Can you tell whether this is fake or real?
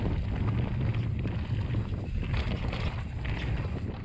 real